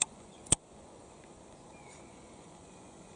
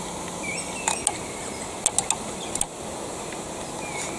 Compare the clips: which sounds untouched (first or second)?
second